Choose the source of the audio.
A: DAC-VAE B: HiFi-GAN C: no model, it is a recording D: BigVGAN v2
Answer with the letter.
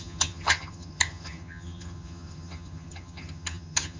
B